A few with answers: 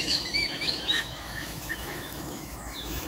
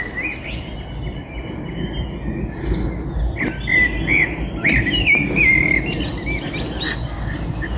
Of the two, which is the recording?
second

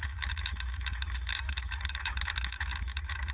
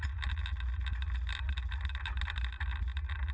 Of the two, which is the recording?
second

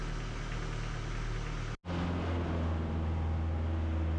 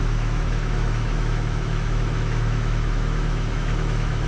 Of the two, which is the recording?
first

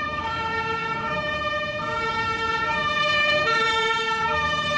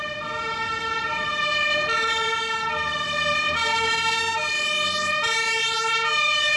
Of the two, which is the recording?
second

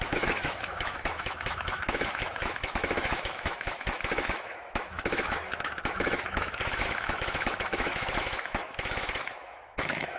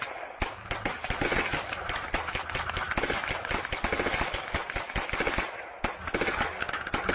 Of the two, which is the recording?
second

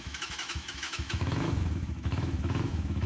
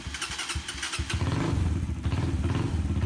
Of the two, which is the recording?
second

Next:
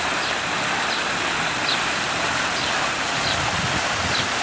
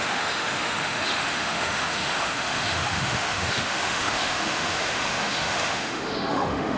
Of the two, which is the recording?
first